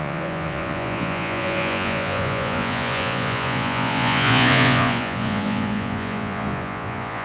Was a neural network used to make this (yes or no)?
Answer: yes